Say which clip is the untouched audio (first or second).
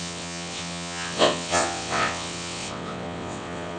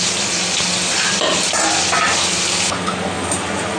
second